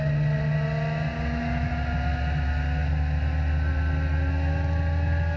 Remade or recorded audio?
recorded